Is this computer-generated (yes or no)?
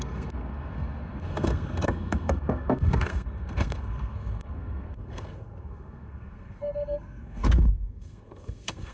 yes